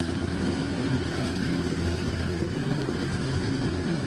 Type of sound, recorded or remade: remade